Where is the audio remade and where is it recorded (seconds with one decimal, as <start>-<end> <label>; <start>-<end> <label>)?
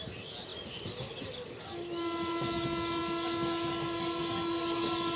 0.0-5.2 recorded